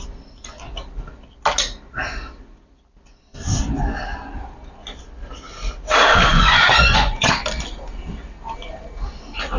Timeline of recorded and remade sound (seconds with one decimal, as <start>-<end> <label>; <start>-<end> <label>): 0.0-6.3 recorded; 6.3-7.3 remade; 7.3-9.6 recorded